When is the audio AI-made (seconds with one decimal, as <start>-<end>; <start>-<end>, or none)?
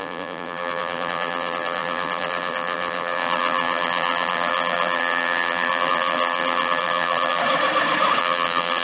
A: 0.0-7.4; 8.2-8.8